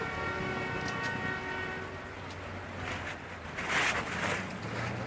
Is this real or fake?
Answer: real